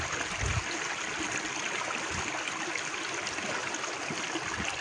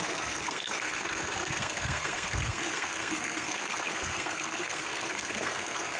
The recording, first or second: first